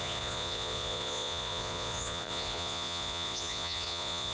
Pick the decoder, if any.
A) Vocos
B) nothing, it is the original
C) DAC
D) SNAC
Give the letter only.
A